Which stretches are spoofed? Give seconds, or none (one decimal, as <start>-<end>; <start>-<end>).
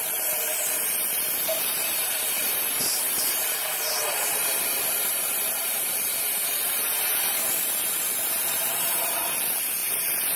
0.0-10.4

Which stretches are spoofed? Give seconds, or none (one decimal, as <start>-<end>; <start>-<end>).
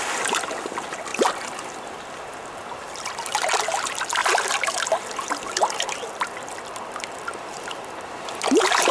1.1-3.1; 4.2-7.9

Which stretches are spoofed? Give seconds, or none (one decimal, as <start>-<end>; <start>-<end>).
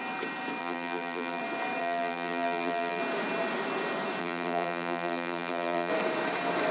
0.6-1.4; 1.8-3.0; 4.2-5.9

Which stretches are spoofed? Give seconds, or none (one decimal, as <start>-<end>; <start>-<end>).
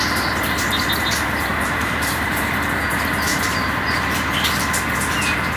1.5-2.5; 3.3-4.1